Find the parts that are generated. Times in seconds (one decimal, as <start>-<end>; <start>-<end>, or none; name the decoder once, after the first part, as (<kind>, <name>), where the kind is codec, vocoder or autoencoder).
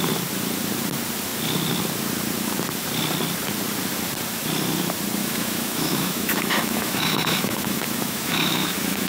5.2-9.1 (autoencoder, DAC-VAE)